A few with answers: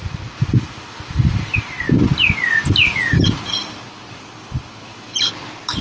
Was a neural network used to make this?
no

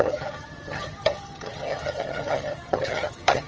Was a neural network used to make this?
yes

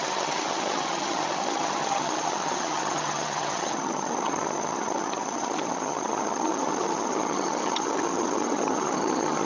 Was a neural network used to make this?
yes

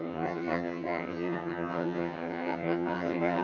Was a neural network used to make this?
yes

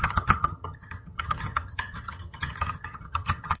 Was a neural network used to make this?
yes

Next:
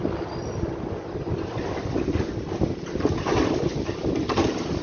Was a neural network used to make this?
no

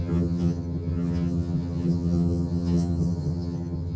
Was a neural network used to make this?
yes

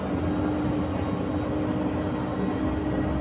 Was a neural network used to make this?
no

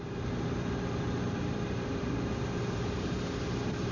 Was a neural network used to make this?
no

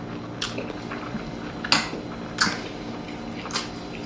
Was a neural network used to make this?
no